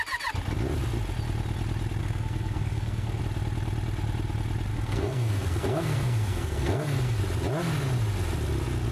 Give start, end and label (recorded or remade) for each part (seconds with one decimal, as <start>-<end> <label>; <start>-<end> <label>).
0.0-2.0 recorded; 2.0-3.2 remade; 3.2-4.7 recorded; 4.7-7.2 remade; 7.2-8.9 recorded

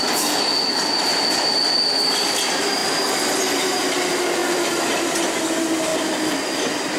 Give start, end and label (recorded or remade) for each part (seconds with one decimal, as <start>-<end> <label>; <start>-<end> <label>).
0.0-7.0 recorded

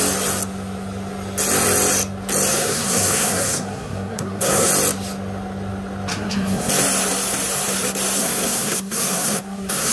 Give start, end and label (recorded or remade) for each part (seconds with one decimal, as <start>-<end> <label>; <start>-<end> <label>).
0.0-2.5 recorded; 2.5-4.7 remade; 4.7-6.1 recorded; 6.1-6.7 remade; 6.7-8.2 recorded; 8.2-9.9 remade

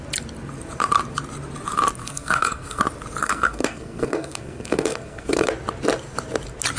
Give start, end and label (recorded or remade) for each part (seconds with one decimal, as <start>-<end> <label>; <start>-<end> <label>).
0.0-2.0 recorded; 2.0-2.8 remade; 2.8-3.2 recorded; 3.2-5.5 remade; 5.5-6.8 recorded

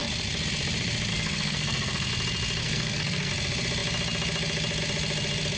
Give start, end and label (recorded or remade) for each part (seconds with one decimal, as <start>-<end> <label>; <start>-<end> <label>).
0.0-1.1 recorded; 1.1-2.1 remade; 2.1-2.6 recorded; 2.6-3.3 remade; 3.3-5.6 recorded

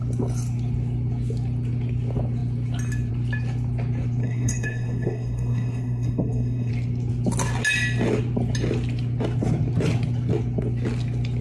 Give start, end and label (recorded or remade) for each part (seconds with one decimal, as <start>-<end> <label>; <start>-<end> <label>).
0.0-4.2 recorded; 4.2-6.7 remade; 6.7-11.4 recorded

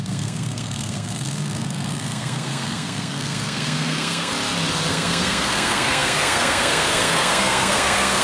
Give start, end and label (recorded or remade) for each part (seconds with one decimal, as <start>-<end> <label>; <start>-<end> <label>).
0.0-4.3 remade; 4.3-4.9 recorded; 4.9-8.2 remade

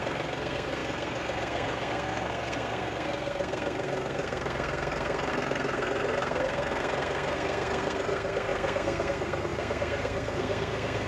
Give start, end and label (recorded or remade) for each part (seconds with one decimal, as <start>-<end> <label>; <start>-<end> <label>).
0.0-11.1 remade